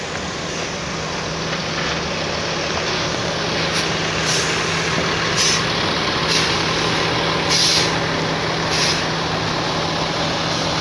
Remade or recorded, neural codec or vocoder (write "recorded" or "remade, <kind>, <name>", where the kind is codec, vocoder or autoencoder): recorded